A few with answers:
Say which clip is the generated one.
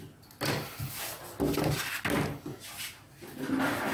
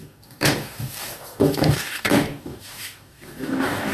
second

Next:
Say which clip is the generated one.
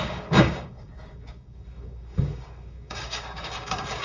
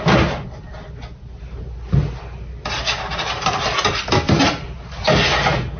first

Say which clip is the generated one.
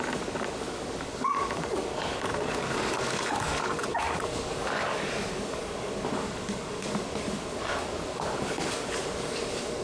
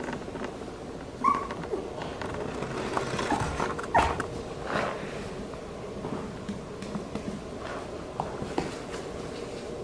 first